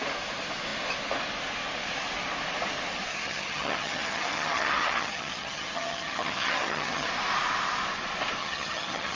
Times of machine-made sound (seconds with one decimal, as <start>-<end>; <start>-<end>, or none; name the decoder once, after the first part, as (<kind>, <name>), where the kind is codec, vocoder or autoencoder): 3.1-7.1 (vocoder, HiFi-GAN); 8.4-9.2